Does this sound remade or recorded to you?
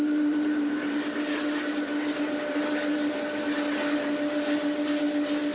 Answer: recorded